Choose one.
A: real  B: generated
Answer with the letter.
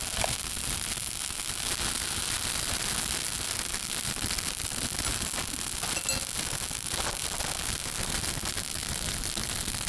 A